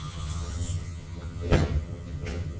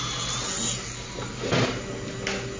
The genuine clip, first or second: second